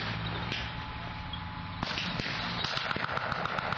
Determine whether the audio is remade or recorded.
recorded